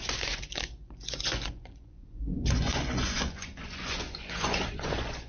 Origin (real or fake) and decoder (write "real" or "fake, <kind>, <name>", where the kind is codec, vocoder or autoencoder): fake, vocoder, Vocos